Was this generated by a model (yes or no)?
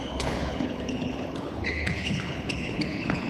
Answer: yes